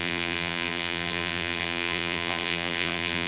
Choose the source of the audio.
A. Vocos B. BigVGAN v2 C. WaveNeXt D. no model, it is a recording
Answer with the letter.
B